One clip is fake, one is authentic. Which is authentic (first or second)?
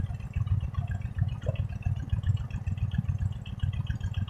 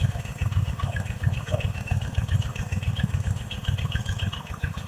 first